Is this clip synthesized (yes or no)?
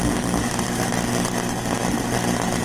no